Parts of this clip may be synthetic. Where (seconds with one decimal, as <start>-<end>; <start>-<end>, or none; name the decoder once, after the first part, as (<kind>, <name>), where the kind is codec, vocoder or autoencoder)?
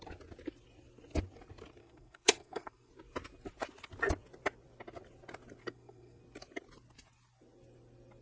1.8-2.9 (codec, SNAC); 5.6-6.2